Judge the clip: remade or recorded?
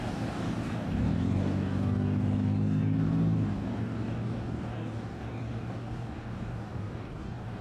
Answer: remade